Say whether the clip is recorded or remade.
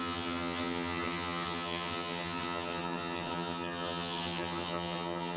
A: remade